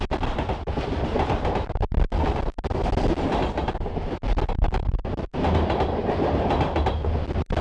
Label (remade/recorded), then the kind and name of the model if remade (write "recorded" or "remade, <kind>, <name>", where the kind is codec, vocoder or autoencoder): recorded